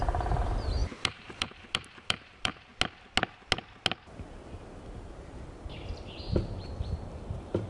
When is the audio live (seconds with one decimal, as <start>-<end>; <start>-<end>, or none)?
2.7-6.8